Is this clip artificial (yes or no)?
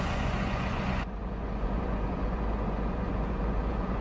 yes